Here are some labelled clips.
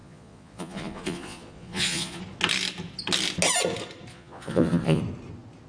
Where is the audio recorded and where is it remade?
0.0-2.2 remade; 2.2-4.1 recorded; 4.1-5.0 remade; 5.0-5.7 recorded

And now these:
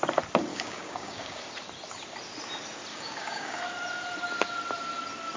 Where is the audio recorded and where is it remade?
0.0-0.5 recorded; 0.5-1.4 remade; 1.4-2.9 recorded; 2.9-3.6 remade; 3.6-5.4 recorded

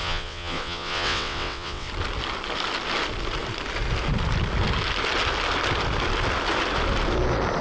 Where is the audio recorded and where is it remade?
0.0-1.9 remade; 1.9-7.6 recorded

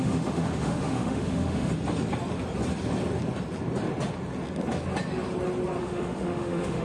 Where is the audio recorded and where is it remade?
0.0-1.7 remade; 1.7-5.8 recorded; 5.8-6.8 remade

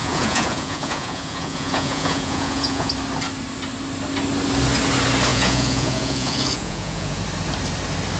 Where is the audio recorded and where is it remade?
0.0-2.9 remade; 2.9-5.3 recorded; 5.3-7.2 remade; 7.2-8.2 recorded